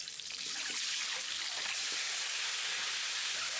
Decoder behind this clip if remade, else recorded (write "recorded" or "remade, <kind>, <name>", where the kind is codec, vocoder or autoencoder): recorded